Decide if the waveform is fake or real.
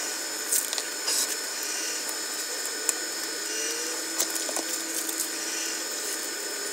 real